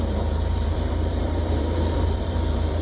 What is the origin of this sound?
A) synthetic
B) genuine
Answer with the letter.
A